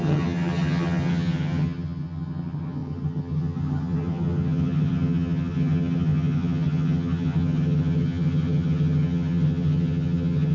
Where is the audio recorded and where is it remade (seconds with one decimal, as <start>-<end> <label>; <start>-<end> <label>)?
0.0-10.5 remade